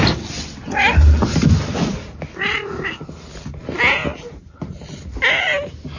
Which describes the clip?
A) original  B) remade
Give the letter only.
A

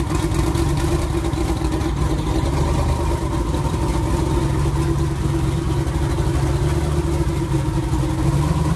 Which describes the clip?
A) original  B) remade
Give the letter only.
A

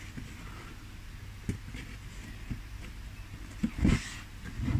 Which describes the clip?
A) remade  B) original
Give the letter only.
B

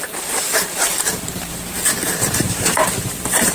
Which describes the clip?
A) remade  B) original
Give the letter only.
A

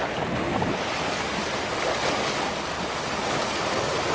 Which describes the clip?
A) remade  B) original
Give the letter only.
B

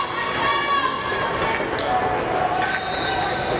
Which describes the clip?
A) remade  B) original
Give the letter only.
B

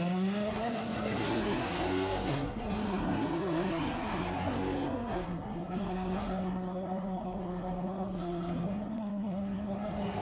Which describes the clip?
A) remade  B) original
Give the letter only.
A